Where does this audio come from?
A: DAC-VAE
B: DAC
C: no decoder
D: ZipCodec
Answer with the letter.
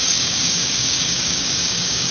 B